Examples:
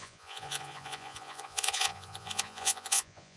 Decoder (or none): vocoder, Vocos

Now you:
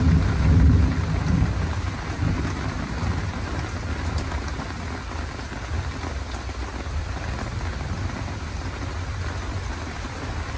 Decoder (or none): none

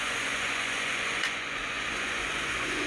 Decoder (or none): vocoder, Vocos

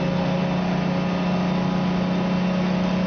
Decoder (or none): none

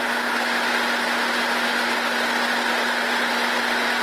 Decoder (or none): none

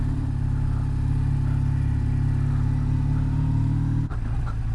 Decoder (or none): none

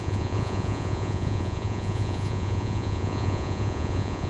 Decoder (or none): vocoder, Vocos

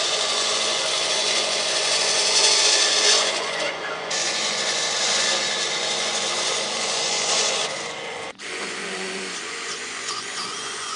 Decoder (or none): vocoder, Vocos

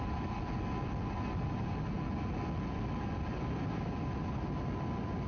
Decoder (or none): none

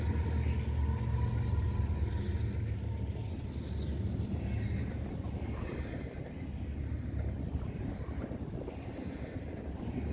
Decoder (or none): none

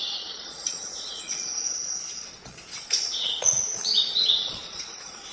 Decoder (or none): vocoder, Vocos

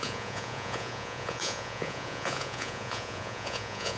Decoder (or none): vocoder, Vocos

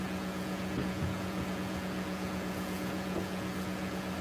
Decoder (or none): vocoder, Vocos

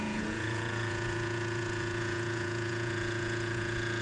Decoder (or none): vocoder, Vocos